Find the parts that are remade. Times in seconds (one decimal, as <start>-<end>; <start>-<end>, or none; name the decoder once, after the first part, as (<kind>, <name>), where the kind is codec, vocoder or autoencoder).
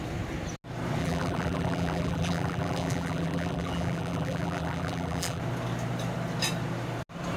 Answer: 1.0-5.4 (vocoder, BigVGAN v2)